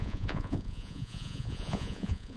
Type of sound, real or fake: fake